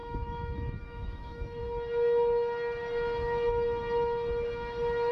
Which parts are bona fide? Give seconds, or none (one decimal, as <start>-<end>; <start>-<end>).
1.6-5.1